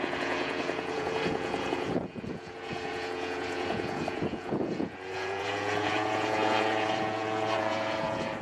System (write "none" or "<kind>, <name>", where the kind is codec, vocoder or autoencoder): vocoder, Vocos